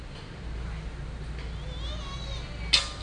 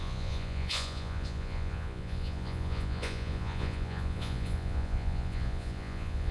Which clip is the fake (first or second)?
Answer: second